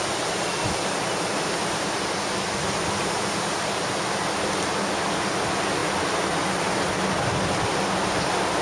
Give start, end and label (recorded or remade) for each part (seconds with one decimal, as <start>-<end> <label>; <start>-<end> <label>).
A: 0.0-8.6 recorded